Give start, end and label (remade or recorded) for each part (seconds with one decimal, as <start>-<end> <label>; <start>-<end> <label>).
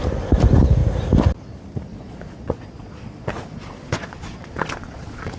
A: 0.0-1.9 recorded; 1.9-5.4 remade